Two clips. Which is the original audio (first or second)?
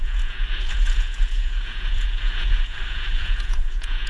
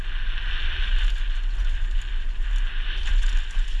second